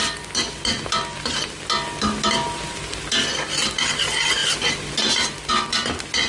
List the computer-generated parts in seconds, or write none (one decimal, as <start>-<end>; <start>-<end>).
none